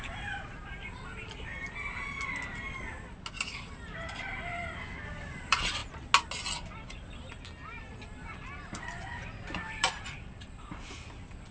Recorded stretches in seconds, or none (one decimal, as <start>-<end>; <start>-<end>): 1.5-3.3; 4.6-5.1; 5.8-8.5

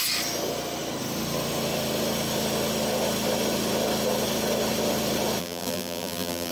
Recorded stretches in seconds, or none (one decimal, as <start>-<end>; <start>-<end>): 0.0-5.4

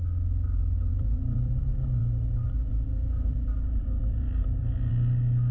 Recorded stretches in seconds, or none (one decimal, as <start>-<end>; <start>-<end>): 0.0-0.9; 1.6-3.8; 4.9-5.5

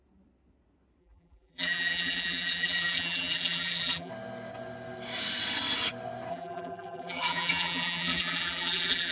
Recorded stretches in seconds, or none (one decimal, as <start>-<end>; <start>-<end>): 0.0-1.0; 4.1-6.3

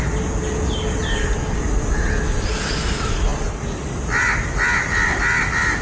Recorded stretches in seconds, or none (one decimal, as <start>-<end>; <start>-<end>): 0.0-5.8

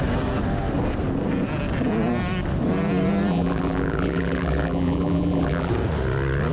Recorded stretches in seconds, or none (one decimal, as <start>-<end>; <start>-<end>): 0.0-3.3; 5.7-6.5

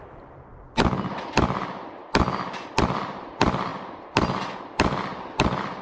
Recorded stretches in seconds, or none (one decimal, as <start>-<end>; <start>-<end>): 0.5-1.1; 2.0-2.8